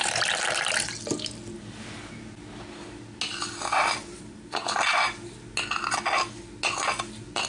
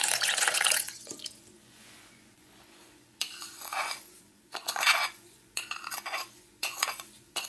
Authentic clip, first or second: first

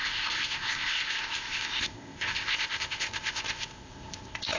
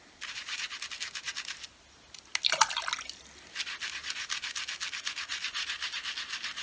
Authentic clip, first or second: second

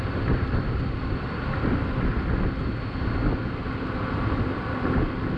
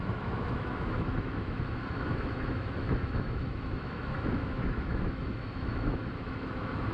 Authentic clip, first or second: first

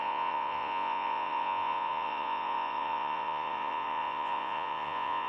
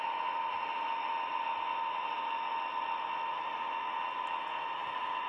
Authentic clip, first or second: second